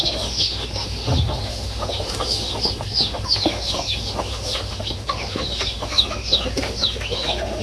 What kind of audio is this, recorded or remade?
remade